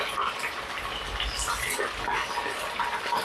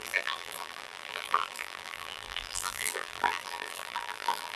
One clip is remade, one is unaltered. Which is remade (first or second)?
second